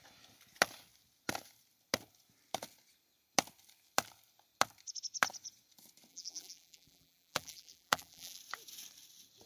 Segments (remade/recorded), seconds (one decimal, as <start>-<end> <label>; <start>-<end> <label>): 0.0-6.1 recorded; 6.1-8.4 remade; 8.4-9.5 recorded